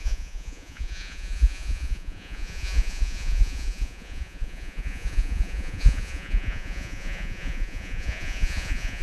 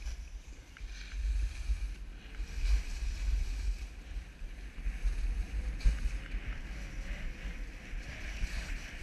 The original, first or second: second